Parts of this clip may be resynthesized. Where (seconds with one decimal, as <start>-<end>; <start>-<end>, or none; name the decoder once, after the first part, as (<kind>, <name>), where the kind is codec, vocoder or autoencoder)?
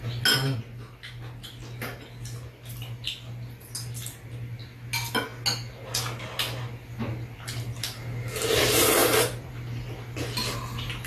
9.0-9.5 (vocoder, BigVGAN v2)